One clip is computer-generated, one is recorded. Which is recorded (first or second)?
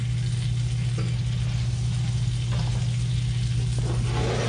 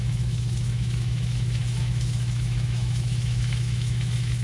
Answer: first